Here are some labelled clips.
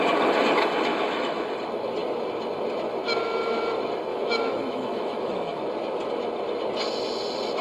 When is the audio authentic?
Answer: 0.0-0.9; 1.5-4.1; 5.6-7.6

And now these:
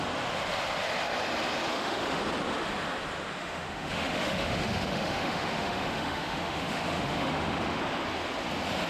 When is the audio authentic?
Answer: 0.0-1.7; 2.2-3.4; 7.8-8.9